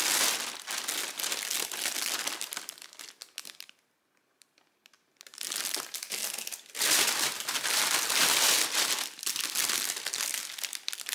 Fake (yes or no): no